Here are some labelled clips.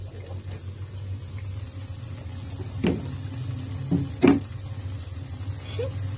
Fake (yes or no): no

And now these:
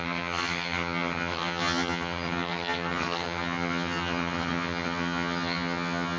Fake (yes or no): yes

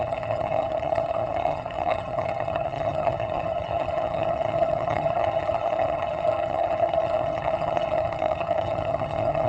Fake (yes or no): yes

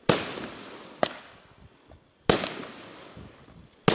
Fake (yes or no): no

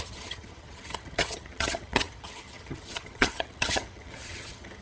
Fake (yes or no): yes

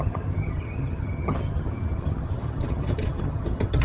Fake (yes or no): yes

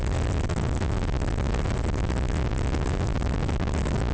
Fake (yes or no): no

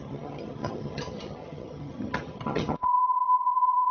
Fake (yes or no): yes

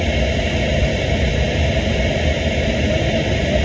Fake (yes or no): no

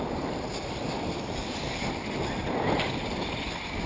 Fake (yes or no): no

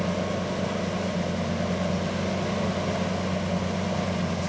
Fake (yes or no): no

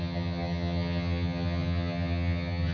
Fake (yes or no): yes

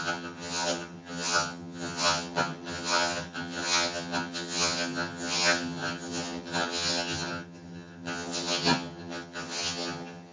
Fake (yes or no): yes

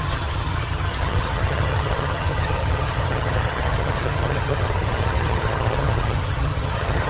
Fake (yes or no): yes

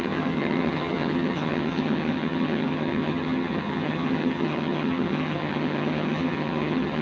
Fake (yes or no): yes